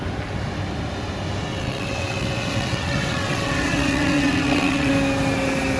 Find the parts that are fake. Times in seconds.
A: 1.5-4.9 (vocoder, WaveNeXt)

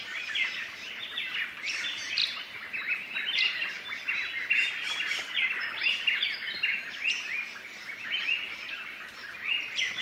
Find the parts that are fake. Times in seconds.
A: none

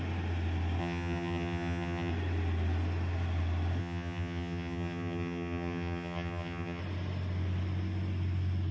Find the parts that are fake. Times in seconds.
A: 0.8-2.1 (vocoder, HiFi-GAN); 3.8-6.8

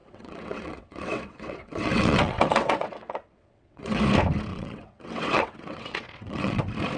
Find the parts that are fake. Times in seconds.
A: 0.0-4.0 (vocoder, WaveNeXt); 4.5-6.6

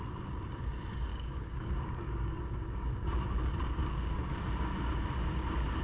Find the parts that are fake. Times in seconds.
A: 1.1-2.4 (codec, DAC); 3.8-4.4